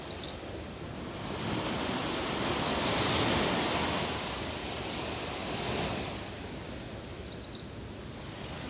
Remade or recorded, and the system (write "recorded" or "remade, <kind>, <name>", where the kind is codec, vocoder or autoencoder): recorded